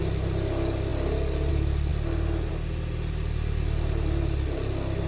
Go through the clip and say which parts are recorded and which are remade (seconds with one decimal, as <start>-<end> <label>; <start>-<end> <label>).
0.0-5.1 recorded